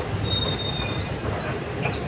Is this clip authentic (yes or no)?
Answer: yes